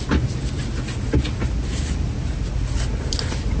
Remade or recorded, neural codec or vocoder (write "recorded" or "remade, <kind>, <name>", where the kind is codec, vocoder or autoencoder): recorded